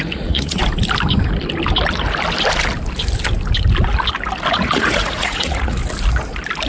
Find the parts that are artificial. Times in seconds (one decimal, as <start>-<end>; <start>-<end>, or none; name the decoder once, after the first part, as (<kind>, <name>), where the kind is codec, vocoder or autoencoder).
0.0-0.6 (vocoder, Vocos); 4.6-5.8